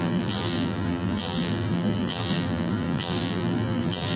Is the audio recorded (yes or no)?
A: no